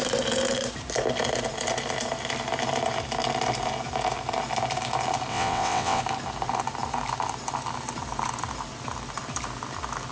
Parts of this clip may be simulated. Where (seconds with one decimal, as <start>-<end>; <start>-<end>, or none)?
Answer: 5.3-6.0